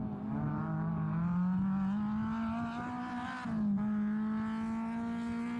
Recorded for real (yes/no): yes